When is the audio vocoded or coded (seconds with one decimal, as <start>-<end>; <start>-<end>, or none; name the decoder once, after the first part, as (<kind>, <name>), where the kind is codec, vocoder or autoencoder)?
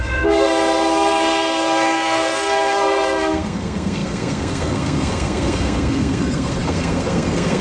0.0-7.6 (codec, SNAC)